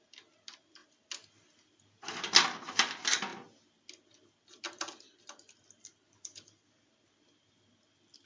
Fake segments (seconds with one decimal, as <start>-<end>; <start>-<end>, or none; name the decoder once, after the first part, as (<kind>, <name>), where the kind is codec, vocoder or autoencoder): none